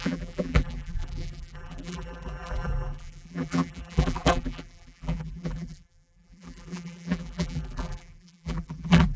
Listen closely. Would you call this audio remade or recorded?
remade